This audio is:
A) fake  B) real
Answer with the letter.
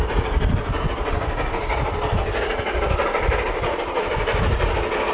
B